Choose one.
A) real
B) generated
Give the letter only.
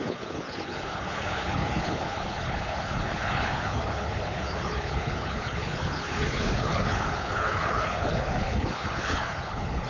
B